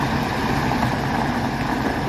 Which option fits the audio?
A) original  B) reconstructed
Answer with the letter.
A